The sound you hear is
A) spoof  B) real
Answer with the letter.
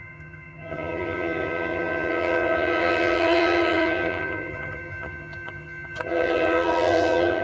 A